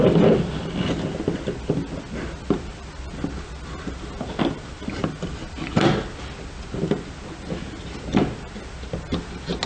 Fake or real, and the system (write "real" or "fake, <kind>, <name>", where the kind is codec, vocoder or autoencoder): real